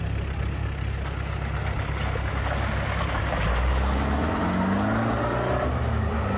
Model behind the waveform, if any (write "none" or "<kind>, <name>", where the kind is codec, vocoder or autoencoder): none